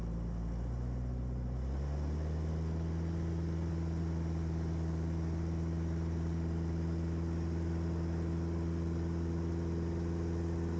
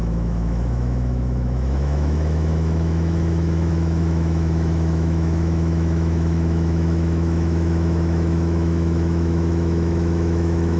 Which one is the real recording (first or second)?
first